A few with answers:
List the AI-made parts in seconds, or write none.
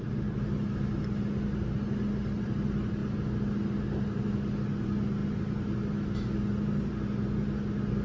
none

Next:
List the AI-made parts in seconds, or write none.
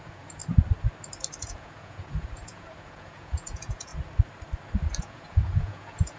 0.0-0.4 (vocoder, Vocos); 1.4-3.9; 5.0-6.2